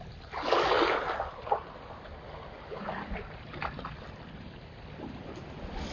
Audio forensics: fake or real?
real